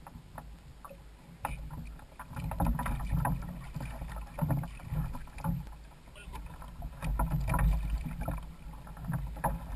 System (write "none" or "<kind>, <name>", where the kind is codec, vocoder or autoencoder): none